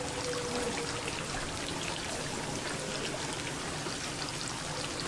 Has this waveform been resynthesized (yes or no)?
no